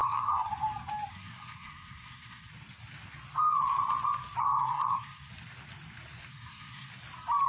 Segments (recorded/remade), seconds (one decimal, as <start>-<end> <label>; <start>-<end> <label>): 0.0-0.5 remade; 0.5-1.1 recorded; 1.1-2.5 remade; 2.5-4.4 recorded; 4.4-5.3 remade; 5.3-6.3 recorded; 6.3-6.9 remade; 6.9-7.5 recorded